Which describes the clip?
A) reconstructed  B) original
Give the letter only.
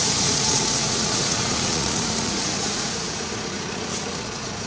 A